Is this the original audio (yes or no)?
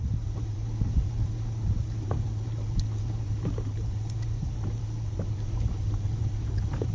no